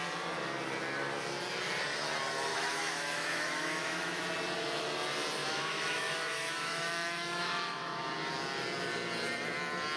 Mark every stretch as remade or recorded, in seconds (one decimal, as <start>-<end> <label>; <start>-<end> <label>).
0.0-2.5 recorded; 2.5-4.2 remade; 4.2-5.4 recorded; 5.4-8.0 remade; 8.0-10.0 recorded